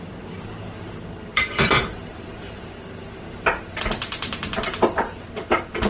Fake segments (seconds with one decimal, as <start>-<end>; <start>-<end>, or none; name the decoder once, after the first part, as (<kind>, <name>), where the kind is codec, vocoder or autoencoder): 1.3-2.6 (vocoder, BigVGAN v2)